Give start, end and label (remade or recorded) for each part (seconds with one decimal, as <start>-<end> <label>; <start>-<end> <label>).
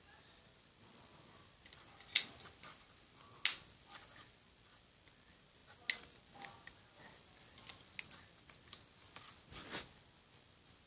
0.0-10.9 recorded